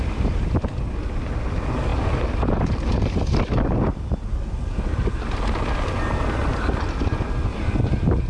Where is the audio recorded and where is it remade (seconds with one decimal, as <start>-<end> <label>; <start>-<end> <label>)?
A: 0.0-8.3 recorded

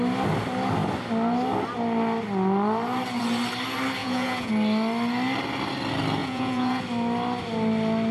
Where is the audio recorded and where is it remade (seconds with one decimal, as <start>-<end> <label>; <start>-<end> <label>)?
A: 0.0-4.0 recorded; 4.0-4.5 remade; 4.5-6.2 recorded; 6.2-6.8 remade; 6.8-8.1 recorded

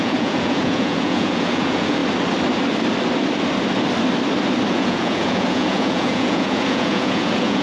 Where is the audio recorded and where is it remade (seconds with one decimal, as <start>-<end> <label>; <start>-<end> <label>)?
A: 0.0-2.0 remade; 2.0-4.7 recorded; 4.7-7.6 remade

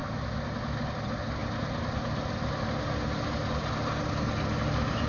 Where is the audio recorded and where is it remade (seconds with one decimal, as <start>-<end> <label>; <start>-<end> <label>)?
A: 0.0-5.1 recorded